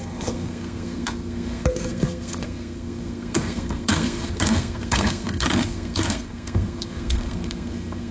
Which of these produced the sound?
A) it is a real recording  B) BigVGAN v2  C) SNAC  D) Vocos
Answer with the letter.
C